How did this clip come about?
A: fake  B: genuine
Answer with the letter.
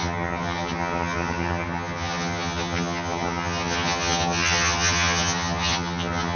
A